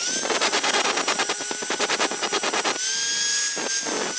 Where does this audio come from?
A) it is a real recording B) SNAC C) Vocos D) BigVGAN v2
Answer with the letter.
A